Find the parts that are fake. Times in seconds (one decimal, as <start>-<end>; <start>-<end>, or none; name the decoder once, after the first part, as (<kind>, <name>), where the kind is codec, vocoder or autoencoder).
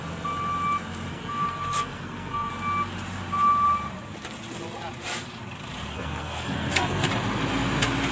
1.1-2.5 (codec, SNAC); 5.9-7.1